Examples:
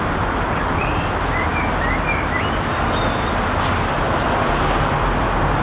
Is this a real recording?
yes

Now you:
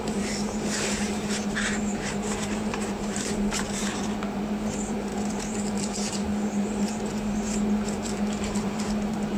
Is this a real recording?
no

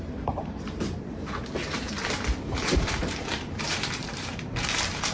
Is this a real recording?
no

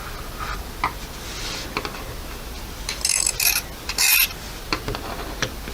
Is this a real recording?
yes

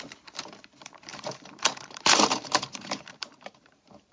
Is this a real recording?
no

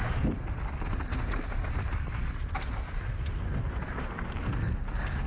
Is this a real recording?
yes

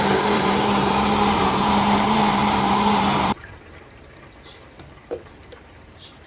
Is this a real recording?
no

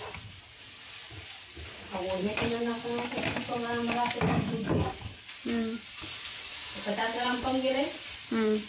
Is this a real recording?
no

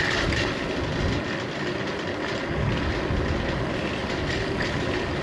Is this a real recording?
yes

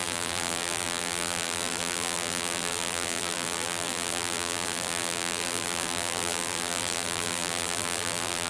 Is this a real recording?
no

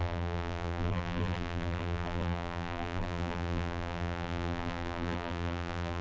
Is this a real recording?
no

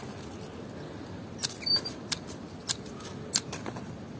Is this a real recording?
yes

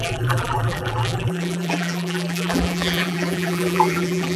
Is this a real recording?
no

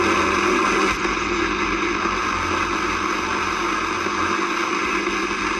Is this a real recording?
yes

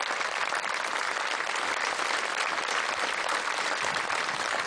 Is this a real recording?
yes